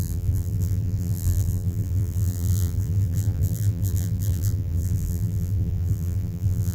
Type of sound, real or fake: fake